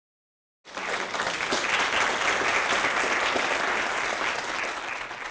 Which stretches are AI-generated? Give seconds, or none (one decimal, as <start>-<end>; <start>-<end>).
none